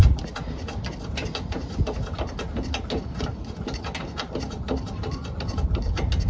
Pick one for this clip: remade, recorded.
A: recorded